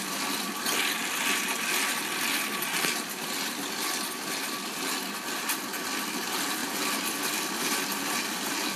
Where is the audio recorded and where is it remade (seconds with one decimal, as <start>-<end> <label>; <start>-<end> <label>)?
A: 0.0-8.8 recorded